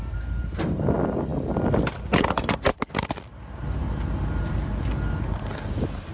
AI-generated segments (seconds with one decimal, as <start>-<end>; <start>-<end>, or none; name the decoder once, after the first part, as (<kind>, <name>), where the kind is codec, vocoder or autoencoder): none

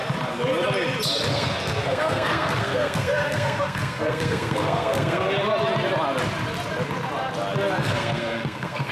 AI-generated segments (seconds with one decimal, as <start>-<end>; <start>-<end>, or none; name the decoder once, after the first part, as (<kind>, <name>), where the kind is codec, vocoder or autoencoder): 1.3-5.3 (codec, SNAC); 7.8-8.9

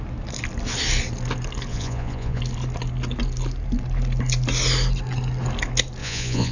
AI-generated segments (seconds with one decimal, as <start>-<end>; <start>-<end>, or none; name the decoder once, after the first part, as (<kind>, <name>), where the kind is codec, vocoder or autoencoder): 1.7-2.4 (vocoder, Vocos); 6.0-6.5

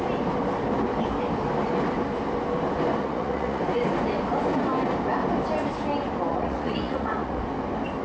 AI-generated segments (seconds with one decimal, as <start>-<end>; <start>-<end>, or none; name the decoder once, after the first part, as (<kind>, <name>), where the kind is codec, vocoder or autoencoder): 3.0-3.6 (vocoder, Vocos); 6.3-7.4

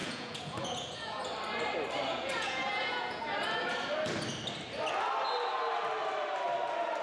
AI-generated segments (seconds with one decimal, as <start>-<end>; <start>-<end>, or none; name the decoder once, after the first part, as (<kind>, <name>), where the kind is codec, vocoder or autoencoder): 0.0-1.2 (vocoder, Vocos); 2.1-3.2